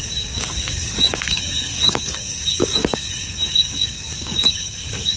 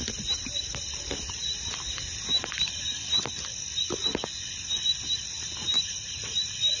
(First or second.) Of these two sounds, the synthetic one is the first